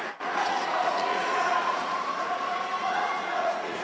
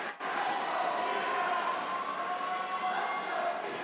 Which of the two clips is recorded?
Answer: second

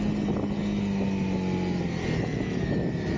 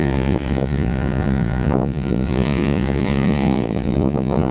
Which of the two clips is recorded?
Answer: first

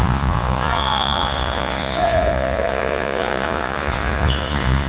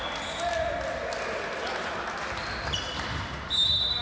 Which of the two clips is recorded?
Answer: second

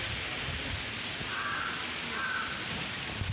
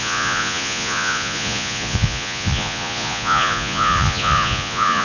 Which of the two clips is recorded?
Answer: first